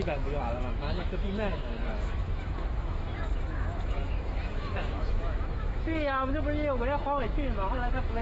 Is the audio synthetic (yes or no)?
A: yes